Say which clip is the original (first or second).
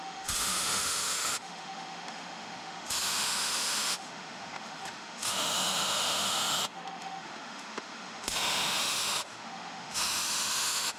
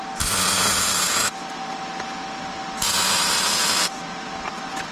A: second